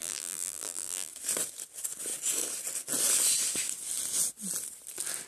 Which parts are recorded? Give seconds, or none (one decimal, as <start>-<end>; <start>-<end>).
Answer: 1.1-5.3